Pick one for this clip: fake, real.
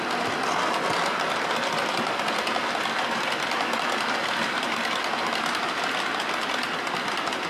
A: real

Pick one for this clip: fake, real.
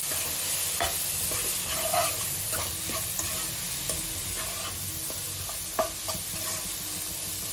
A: real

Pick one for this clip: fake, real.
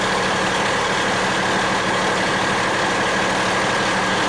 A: real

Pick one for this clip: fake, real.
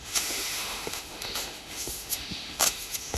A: fake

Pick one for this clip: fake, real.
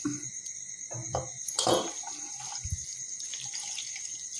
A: real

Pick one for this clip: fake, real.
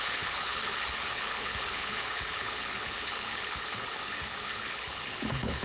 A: fake